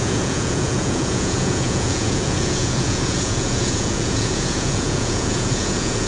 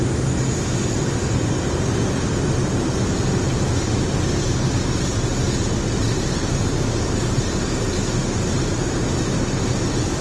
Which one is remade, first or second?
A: first